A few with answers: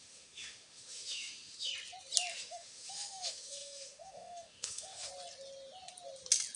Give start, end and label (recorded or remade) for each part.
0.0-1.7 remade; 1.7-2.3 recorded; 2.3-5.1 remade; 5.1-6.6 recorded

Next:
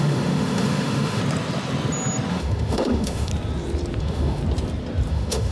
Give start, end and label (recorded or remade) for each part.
0.0-1.2 remade; 1.2-2.3 recorded; 2.3-3.3 remade; 3.3-4.0 recorded; 4.0-4.4 remade; 4.4-5.1 recorded; 5.1-5.5 remade